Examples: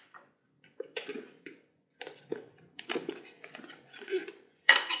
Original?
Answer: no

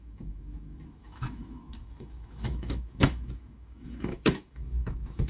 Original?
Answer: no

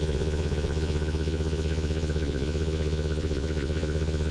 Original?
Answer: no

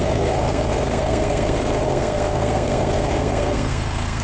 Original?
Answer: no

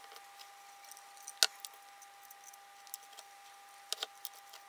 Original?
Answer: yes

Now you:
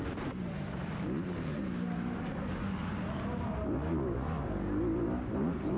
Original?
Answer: no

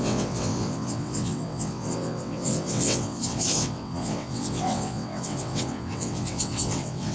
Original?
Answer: no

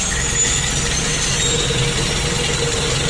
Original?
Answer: yes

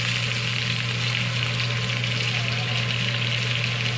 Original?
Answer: yes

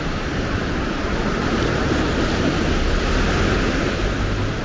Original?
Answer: yes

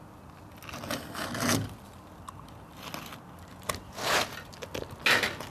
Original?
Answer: yes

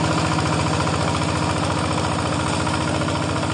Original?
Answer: yes